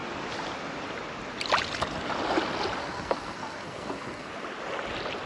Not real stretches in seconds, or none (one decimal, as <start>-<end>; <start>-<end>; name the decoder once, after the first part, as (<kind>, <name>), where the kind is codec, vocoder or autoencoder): 2.8-4.3 (codec, SNAC)